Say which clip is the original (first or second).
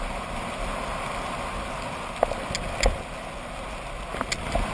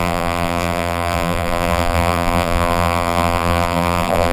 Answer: first